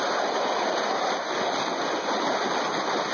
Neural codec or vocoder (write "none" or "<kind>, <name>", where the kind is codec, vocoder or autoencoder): none